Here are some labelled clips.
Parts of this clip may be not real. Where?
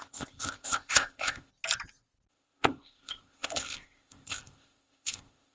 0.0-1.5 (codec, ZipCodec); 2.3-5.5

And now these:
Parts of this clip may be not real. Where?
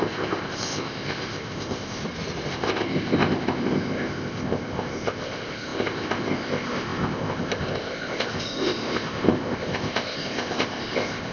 0.0-2.0 (codec, ZipCodec); 2.5-11.3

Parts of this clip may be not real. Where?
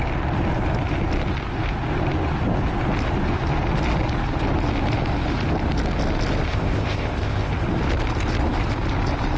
6.5-7.5 (codec, ZipCodec)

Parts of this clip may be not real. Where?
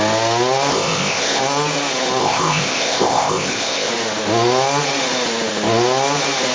0.7-1.4 (codec, ZipCodec); 2.2-3.9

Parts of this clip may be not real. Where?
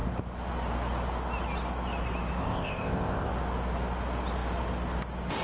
2.4-3.3 (codec, ZipCodec)